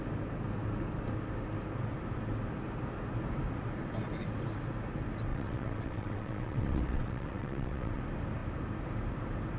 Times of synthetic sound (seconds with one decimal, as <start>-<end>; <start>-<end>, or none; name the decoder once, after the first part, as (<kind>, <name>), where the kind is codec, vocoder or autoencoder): 5.3-8.0 (vocoder, WaveNeXt)